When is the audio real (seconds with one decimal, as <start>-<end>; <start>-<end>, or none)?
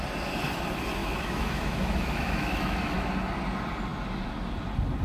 0.0-1.0; 3.1-5.0